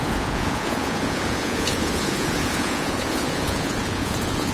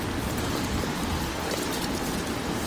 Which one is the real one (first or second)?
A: second